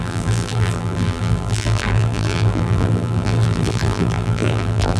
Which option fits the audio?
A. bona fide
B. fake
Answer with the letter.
B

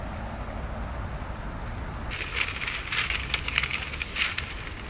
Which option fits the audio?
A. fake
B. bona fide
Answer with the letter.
B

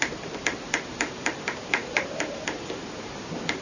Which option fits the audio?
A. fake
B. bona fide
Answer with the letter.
A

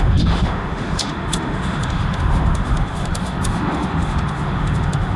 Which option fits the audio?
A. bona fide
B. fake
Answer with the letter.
B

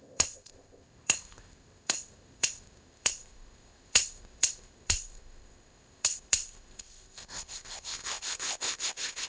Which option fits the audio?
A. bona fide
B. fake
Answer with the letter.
B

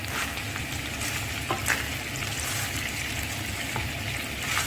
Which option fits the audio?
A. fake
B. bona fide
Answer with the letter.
B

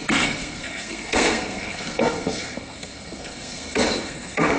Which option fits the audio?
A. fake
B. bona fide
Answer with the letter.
A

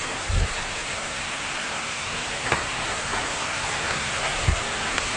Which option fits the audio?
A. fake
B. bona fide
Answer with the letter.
A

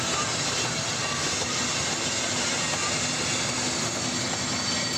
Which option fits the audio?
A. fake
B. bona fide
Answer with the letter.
B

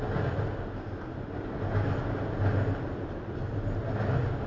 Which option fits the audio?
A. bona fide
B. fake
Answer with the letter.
A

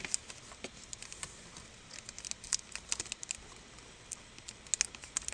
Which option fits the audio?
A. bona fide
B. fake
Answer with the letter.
A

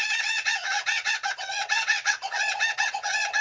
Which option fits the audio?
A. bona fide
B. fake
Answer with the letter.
B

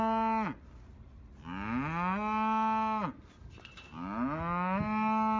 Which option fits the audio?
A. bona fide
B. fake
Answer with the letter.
A